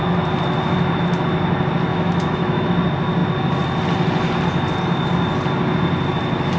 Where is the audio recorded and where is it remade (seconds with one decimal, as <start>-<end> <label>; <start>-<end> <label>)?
0.0-1.9 recorded; 1.9-2.7 remade; 2.7-6.6 recorded